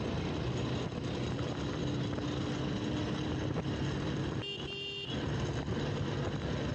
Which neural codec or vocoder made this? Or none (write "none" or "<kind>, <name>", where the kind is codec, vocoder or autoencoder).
none